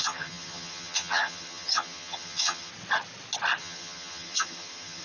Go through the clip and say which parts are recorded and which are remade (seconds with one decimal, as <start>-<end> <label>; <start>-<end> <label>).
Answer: 0.0-2.7 remade; 2.7-3.6 recorded; 3.6-5.0 remade